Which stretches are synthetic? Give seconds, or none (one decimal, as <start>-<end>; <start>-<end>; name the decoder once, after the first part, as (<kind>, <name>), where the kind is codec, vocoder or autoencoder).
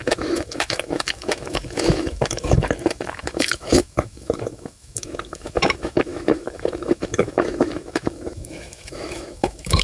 0.0-9.8 (autoencoder, DAC-VAE)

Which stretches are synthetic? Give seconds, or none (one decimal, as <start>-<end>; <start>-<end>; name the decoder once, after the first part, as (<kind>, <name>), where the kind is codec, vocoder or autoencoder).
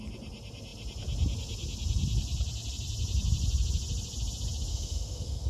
4.7-5.5 (autoencoder, DAC-VAE)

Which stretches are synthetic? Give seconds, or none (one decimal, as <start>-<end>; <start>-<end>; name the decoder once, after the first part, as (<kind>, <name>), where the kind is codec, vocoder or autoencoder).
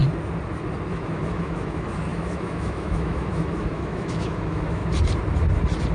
0.9-4.8 (autoencoder, DAC-VAE)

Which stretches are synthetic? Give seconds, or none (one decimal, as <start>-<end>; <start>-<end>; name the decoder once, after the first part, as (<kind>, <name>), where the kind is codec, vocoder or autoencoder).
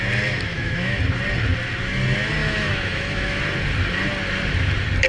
0.5-1.0 (autoencoder, DAC-VAE); 2.4-3.4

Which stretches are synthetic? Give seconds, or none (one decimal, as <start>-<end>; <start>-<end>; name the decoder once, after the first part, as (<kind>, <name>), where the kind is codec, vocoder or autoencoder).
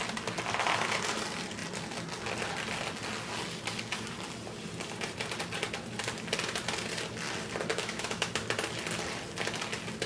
7.7-8.3 (autoencoder, DAC-VAE)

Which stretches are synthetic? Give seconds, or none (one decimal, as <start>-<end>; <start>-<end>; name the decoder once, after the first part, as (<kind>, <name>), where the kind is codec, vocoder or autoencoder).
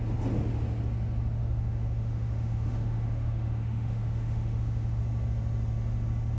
1.4-5.0 (autoencoder, DAC-VAE)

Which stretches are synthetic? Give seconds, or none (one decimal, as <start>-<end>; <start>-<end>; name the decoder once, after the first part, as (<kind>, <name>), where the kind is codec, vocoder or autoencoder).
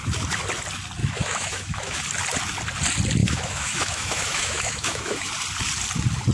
1.0-2.0 (autoencoder, DAC-VAE); 3.2-5.3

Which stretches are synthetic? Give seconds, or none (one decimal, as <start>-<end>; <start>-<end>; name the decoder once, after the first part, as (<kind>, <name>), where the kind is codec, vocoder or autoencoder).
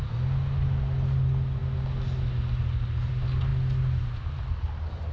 none